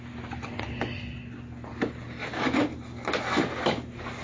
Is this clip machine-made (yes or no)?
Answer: no